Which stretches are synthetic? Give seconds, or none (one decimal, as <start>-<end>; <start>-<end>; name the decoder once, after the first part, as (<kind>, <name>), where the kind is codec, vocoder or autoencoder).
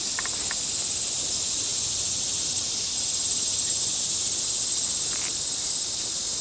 none